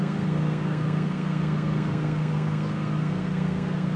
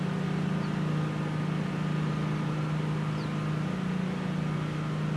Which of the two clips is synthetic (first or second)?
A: first